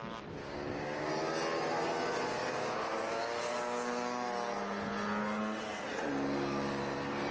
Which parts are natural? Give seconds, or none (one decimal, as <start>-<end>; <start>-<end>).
0.0-0.4; 1.1-7.3